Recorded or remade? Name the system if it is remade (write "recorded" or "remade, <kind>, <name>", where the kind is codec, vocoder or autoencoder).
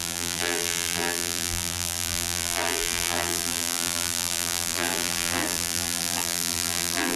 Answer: remade, vocoder, BigVGAN v2